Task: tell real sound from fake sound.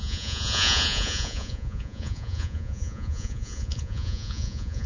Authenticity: fake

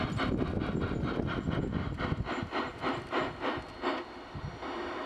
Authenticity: real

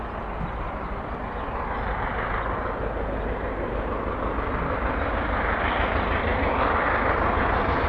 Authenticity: real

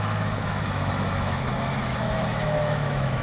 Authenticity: fake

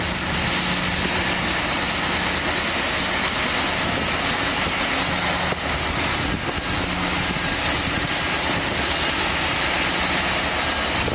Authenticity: real